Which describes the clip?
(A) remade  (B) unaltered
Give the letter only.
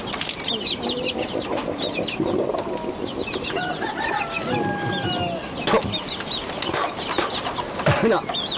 B